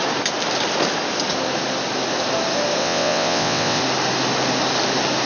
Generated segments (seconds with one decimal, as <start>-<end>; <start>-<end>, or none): 2.8-3.8